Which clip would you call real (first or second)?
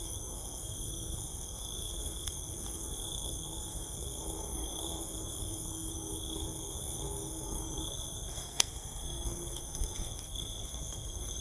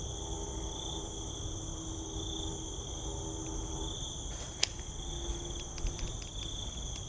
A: second